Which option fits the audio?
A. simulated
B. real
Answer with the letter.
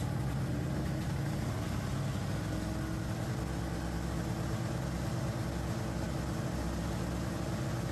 B